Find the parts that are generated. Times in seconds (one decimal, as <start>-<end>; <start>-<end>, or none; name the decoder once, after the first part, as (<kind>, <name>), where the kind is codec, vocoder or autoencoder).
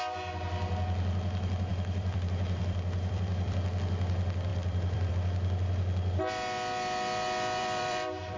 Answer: 1.7-3.6 (vocoder, BigVGAN v2); 4.5-5.1; 7.6-8.4